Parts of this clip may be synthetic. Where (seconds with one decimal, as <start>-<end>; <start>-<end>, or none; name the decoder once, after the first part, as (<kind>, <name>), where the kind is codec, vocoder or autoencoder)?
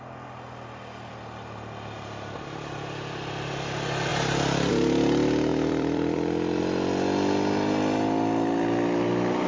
5.5-6.6 (vocoder, BigVGAN v2)